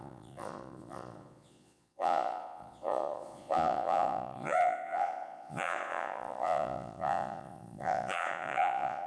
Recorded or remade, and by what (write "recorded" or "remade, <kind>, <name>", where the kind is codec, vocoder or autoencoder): remade, vocoder, Vocos